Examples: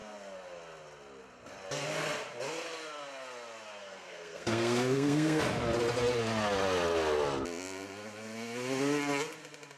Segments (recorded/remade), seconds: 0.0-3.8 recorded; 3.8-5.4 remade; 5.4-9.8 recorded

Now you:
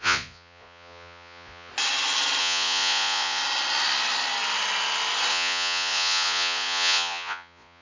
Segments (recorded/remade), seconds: 0.0-1.7 remade; 1.7-2.4 recorded; 2.4-3.4 remade; 3.4-5.3 recorded; 5.3-7.8 remade